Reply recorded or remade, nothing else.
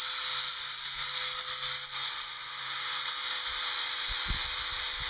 recorded